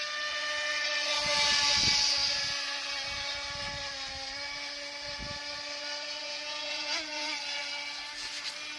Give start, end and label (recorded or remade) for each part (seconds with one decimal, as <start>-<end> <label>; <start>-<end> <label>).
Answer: 0.0-6.2 recorded; 6.2-7.4 remade; 7.4-8.8 recorded